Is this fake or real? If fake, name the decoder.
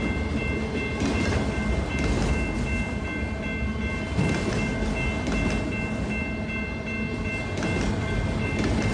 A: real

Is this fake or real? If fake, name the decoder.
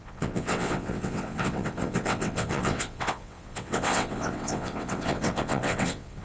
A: fake, vocoder, WaveNeXt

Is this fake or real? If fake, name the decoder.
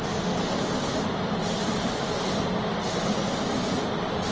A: real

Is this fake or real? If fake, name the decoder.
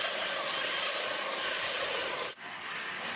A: real